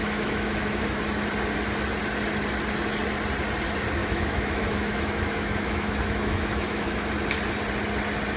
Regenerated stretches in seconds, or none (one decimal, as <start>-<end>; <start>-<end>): 0.0-1.0; 4.0-7.1